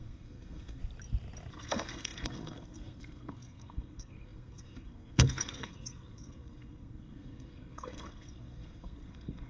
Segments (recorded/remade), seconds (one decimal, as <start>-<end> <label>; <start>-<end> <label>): 0.0-0.8 remade; 0.8-1.5 recorded; 1.5-9.5 remade